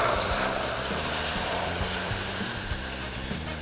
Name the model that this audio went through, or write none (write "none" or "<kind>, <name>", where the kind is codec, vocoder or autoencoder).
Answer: vocoder, BigVGAN v2